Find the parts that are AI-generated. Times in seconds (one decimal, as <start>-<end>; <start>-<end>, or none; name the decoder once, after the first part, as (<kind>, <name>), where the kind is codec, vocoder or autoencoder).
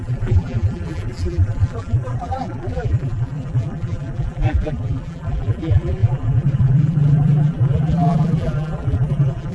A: 0.0-9.5 (vocoder, BigVGAN v2)